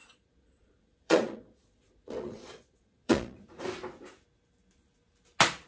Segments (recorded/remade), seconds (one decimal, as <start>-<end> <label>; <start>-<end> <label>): 0.0-3.4 remade; 3.4-5.7 recorded